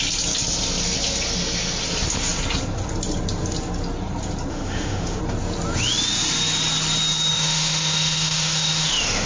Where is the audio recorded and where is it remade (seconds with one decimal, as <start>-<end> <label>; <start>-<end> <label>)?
0.0-4.5 recorded; 4.5-5.2 remade; 5.2-7.3 recorded; 7.3-9.3 remade